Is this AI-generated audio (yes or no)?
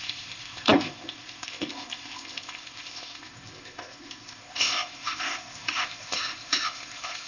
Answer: yes